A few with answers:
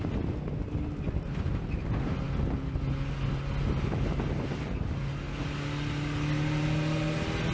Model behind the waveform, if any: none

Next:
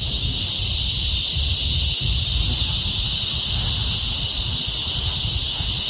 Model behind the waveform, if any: none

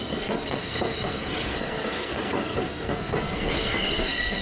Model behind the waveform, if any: codec, SNAC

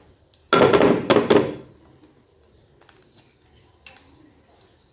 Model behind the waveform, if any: none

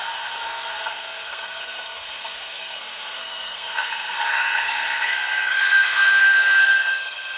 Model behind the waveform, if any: codec, SNAC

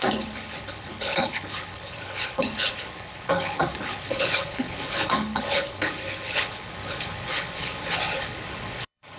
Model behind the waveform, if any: codec, HILCodec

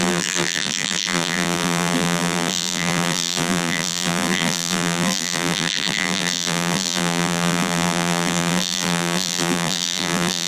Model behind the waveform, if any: vocoder, BigVGAN v2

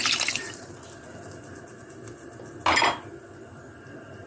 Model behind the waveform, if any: none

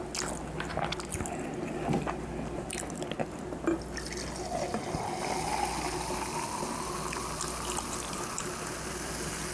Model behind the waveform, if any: none